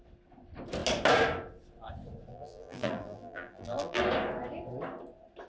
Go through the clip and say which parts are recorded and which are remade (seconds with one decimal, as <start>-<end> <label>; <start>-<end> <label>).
0.0-2.3 recorded; 2.3-4.0 remade; 4.0-5.5 recorded